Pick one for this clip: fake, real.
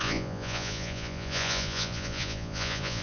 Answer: fake